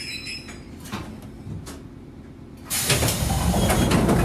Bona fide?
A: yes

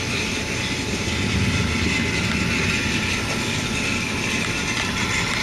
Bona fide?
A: yes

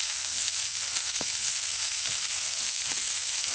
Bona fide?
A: no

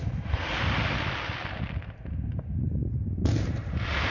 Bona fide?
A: yes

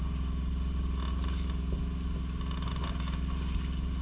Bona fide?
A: yes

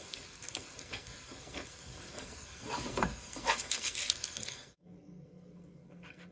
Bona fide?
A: no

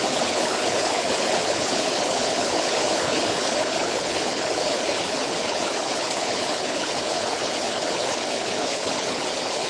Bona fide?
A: no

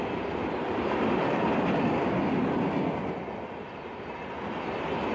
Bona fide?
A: no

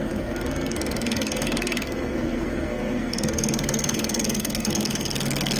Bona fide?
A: no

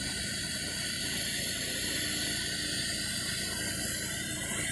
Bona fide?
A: yes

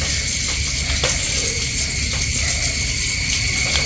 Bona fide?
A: yes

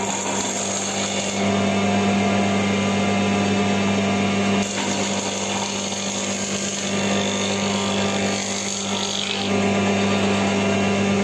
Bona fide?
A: yes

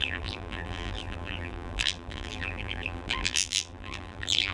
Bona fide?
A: no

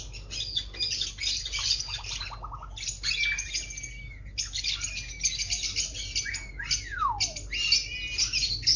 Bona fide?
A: yes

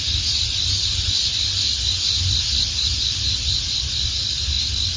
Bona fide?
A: yes